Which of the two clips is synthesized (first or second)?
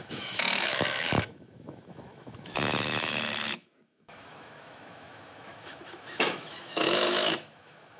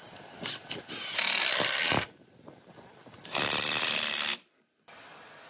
first